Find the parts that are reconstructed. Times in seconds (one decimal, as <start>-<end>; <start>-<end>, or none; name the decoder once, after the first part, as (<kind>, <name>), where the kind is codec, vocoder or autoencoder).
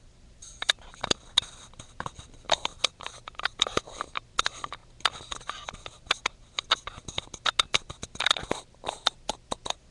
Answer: 2.7-3.8 (vocoder, BigVGAN v2)